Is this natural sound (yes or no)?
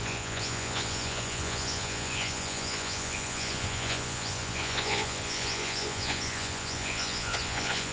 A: no